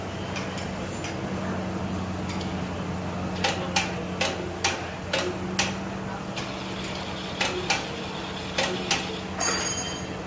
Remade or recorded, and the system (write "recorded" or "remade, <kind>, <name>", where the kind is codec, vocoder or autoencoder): recorded